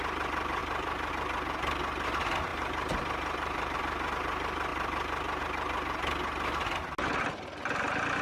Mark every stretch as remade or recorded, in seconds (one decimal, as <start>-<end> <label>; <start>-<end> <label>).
0.0-0.6 recorded; 0.6-1.1 remade; 1.1-2.5 recorded; 2.5-3.8 remade; 3.8-8.2 recorded